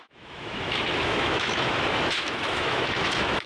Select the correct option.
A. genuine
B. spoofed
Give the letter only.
B